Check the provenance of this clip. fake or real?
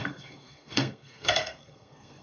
fake